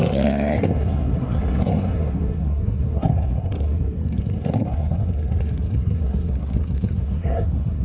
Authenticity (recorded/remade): remade